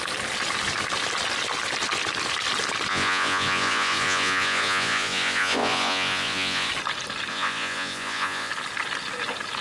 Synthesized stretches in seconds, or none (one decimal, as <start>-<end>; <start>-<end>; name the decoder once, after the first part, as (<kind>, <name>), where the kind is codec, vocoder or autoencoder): 2.9-6.7 (vocoder, Vocos); 7.3-8.5